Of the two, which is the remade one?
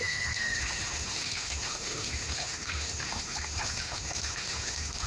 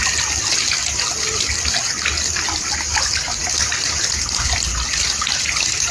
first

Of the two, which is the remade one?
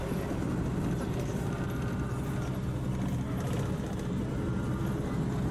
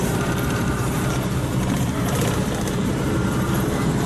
second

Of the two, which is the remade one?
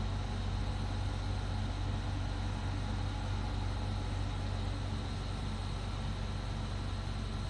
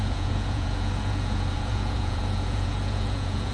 second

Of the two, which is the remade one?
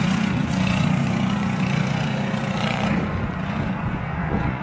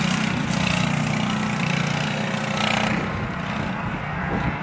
first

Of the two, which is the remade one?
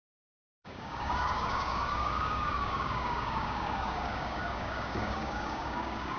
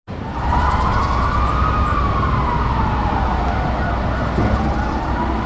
first